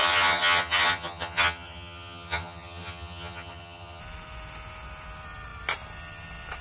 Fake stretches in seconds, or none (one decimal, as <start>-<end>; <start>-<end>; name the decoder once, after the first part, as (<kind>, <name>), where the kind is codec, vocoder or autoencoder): 0.0-4.0 (vocoder, HiFi-GAN)